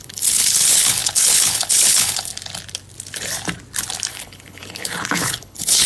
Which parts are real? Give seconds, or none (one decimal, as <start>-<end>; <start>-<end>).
2.3-4.1